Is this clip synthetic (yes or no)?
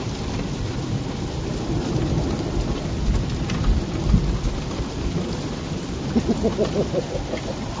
no